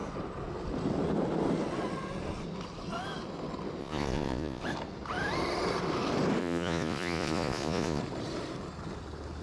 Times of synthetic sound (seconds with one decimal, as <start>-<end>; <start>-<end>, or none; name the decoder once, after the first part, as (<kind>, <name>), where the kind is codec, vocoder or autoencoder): 3.8-4.6 (vocoder, Vocos); 6.4-8.0